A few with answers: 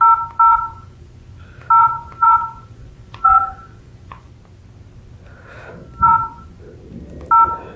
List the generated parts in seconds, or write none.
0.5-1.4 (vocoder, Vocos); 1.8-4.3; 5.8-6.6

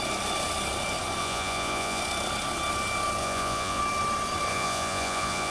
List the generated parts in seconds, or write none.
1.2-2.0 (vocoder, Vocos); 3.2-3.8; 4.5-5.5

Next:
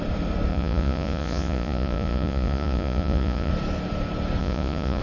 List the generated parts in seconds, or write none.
0.5-3.5 (vocoder, Vocos); 4.4-5.0

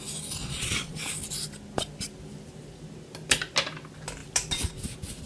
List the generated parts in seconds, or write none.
0.4-1.0 (vocoder, Vocos)